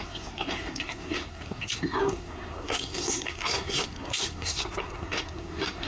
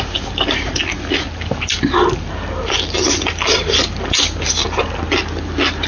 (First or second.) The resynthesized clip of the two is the first